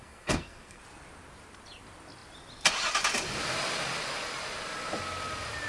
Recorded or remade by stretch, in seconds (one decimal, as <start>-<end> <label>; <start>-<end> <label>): 0.0-0.8 remade; 0.8-5.7 recorded